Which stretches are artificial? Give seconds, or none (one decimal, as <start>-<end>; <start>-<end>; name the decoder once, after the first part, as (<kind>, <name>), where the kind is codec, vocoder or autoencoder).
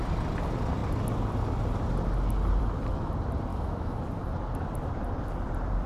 3.5-4.0 (autoencoder, DAC-VAE)